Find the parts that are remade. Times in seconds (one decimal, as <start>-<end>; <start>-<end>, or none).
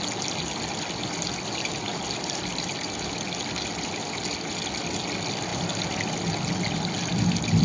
none